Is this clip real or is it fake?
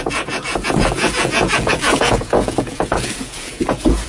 fake